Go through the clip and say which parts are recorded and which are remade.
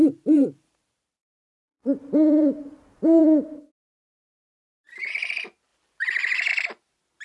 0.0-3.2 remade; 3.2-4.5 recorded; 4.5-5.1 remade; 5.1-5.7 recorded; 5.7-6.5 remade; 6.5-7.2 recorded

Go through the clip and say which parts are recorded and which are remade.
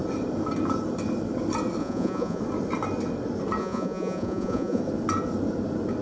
0.0-1.8 recorded; 1.8-2.4 remade; 2.4-3.6 recorded; 3.6-4.8 remade; 4.8-6.0 recorded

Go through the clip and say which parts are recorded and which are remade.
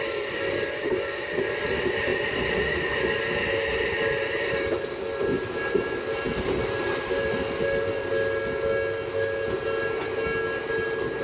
0.0-2.1 recorded; 2.1-2.8 remade; 2.8-3.7 recorded; 3.7-4.5 remade; 4.5-5.3 recorded; 5.3-8.0 remade; 8.0-11.2 recorded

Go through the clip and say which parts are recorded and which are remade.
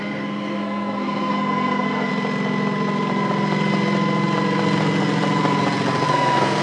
0.0-2.1 remade; 2.1-6.1 recorded; 6.1-6.6 remade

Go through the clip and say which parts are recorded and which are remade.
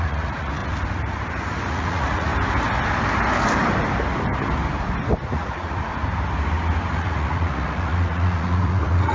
0.0-0.6 remade; 0.6-1.7 recorded; 1.7-2.3 remade; 2.3-5.3 recorded; 5.3-5.9 remade; 5.9-6.9 recorded; 6.9-9.1 remade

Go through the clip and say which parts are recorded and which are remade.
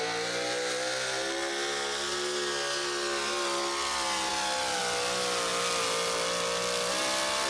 0.0-7.5 recorded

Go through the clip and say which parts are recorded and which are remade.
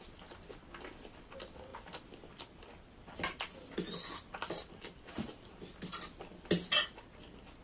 0.0-7.6 recorded